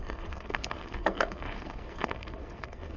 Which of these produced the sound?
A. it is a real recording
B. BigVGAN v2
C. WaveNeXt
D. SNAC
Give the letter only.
D